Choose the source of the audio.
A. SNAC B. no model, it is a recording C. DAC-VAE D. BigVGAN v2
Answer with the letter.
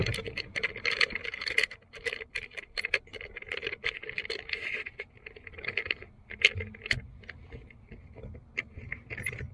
B